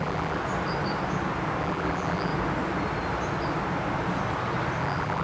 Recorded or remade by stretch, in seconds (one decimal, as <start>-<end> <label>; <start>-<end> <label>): 0.0-0.4 remade; 0.4-1.6 recorded; 1.6-2.3 remade; 2.3-4.8 recorded; 4.8-5.2 remade